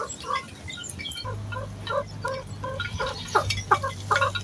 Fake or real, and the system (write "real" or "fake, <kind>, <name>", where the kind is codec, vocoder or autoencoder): real